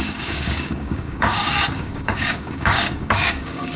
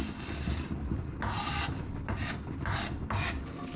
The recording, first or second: second